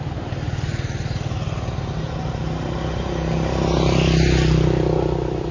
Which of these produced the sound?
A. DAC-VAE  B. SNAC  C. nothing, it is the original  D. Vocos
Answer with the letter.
C